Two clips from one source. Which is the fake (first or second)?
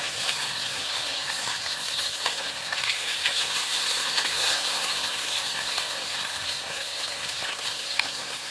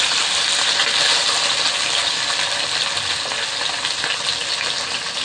first